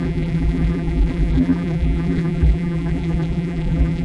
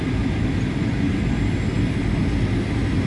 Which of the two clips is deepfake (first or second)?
first